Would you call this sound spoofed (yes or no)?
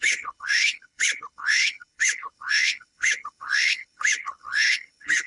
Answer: yes